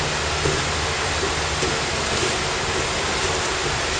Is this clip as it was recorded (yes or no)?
yes